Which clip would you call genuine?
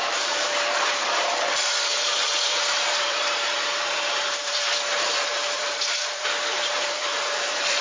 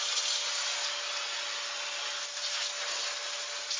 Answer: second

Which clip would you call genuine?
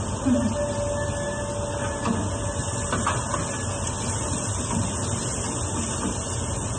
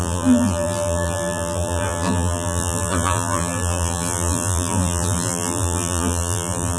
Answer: first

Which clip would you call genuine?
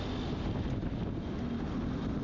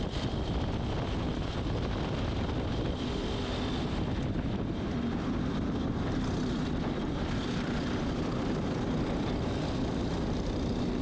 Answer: first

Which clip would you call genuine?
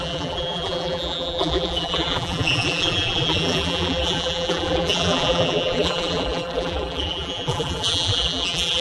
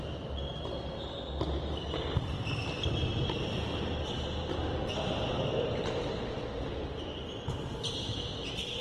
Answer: second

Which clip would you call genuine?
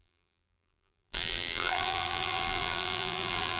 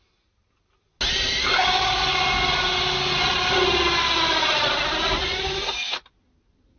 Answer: second